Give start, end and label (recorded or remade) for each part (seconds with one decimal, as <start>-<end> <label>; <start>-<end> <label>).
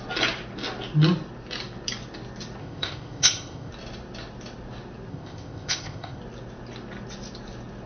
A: 0.0-2.6 recorded; 2.6-3.7 remade; 3.7-5.1 recorded; 5.1-6.2 remade; 6.2-7.9 recorded